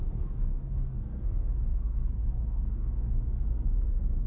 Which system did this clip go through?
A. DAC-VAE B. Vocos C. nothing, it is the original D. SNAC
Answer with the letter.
D